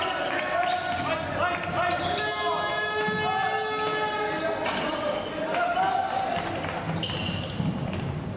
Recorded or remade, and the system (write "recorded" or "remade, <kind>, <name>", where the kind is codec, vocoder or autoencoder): recorded